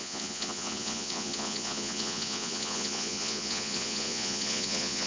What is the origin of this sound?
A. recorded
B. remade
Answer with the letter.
B